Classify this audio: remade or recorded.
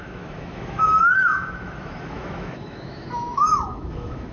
remade